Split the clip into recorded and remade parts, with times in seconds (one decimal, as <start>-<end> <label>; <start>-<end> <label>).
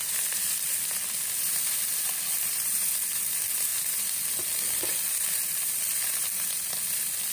0.0-7.3 remade